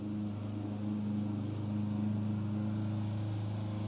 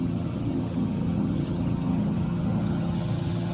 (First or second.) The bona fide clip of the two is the first